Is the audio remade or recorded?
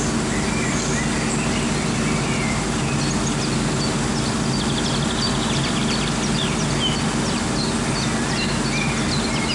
recorded